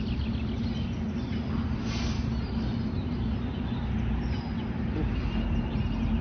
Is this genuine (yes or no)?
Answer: yes